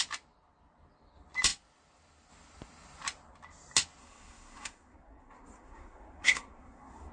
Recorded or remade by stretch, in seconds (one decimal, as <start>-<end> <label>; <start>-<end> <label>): 0.0-4.0 recorded; 4.0-7.1 remade